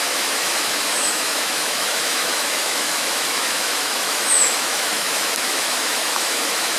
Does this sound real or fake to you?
fake